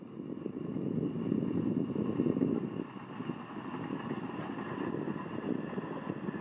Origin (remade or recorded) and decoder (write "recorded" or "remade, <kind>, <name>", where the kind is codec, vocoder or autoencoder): recorded